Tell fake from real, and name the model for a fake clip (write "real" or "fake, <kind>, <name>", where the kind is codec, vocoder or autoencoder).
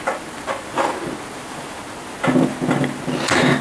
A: real